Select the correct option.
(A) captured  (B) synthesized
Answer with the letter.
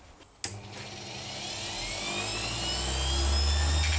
A